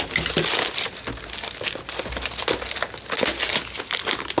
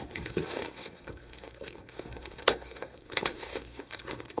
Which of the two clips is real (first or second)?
first